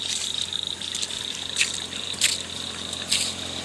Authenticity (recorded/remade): recorded